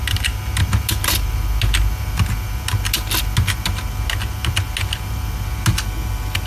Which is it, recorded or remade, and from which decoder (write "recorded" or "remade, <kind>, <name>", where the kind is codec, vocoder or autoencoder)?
recorded